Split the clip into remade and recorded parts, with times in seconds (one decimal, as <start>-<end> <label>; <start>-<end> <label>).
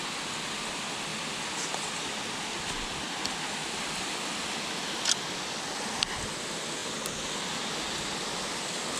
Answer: 0.0-1.1 recorded; 1.1-2.2 remade; 2.2-9.0 recorded